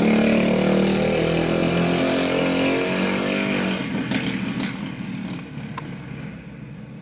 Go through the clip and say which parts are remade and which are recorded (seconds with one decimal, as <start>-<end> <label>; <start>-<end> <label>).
0.0-7.0 recorded